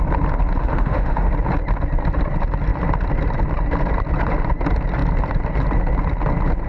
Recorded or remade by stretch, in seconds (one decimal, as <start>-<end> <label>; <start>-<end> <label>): 0.0-0.6 recorded; 0.6-1.3 remade; 1.3-6.7 recorded